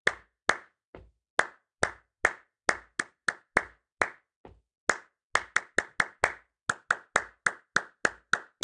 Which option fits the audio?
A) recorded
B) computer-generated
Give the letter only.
A